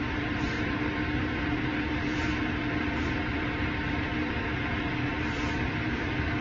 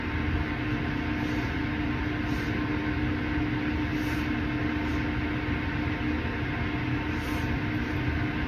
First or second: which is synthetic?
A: first